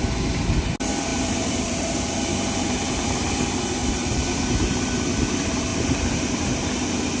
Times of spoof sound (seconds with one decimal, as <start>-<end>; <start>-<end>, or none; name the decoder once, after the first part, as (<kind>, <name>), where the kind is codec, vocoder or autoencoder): 1.1-3.3 (vocoder, BigVGAN v2); 3.8-4.3; 5.7-6.7